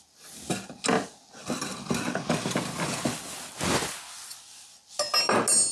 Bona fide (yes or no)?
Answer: yes